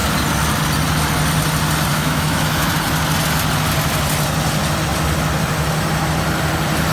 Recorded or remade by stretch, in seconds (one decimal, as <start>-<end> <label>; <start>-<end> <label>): 0.0-1.9 recorded; 1.9-2.7 remade; 2.7-6.9 recorded